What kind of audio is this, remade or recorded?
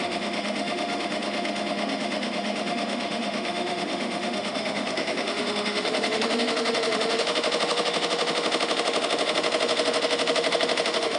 remade